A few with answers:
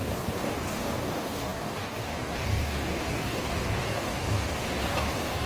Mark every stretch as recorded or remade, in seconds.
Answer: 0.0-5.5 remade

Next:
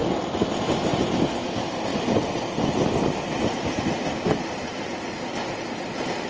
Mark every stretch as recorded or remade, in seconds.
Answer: 0.0-6.3 recorded

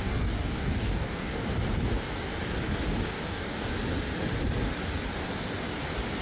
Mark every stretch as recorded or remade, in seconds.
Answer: 0.0-1.4 remade; 1.4-2.6 recorded; 2.6-3.7 remade; 3.7-6.2 recorded

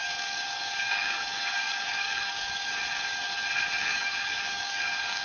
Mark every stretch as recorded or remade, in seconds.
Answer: 0.0-2.8 remade; 2.8-3.8 recorded; 3.8-5.2 remade